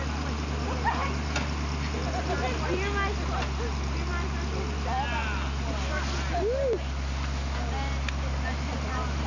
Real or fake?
real